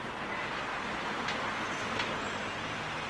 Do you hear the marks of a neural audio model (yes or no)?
no